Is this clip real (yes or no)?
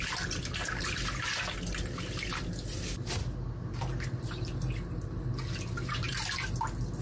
yes